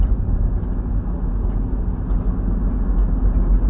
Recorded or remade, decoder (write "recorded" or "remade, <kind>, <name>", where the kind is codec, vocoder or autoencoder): recorded